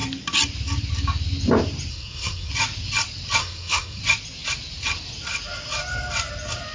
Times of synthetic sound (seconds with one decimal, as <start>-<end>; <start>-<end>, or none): 1.9-2.5; 3.4-4.0